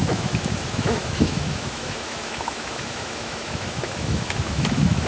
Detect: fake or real fake